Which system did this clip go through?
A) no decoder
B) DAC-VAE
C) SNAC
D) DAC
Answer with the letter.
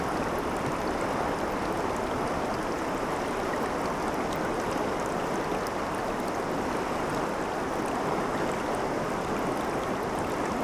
A